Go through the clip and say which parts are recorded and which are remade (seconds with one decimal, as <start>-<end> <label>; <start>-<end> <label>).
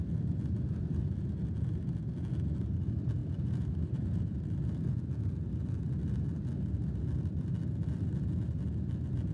0.0-3.2 recorded; 3.2-4.4 remade; 4.4-9.3 recorded